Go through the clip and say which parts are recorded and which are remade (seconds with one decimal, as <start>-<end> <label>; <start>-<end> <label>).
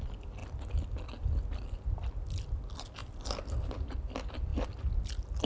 0.0-5.4 recorded